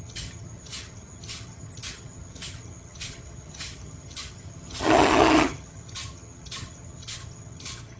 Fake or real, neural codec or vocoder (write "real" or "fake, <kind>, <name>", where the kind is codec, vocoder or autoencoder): fake, vocoder, HiFi-GAN